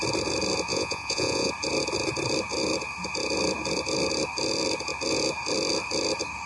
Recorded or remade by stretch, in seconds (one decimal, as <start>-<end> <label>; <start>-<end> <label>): 0.0-0.7 recorded; 0.7-1.5 remade; 1.5-6.5 recorded